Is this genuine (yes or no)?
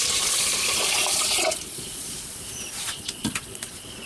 no